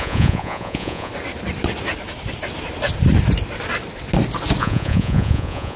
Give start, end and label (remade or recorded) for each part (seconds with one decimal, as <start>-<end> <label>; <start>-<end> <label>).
0.0-1.1 remade; 1.1-4.6 recorded; 4.6-5.8 remade